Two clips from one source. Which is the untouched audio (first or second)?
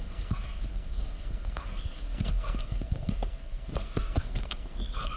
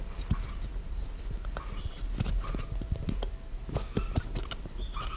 second